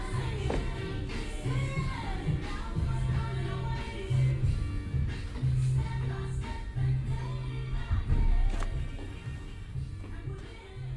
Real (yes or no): yes